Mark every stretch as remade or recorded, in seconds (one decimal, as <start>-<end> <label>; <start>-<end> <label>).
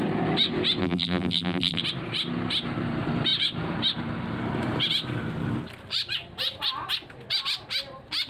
0.0-0.8 recorded; 0.8-1.8 remade; 1.8-8.3 recorded